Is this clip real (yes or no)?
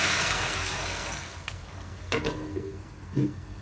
no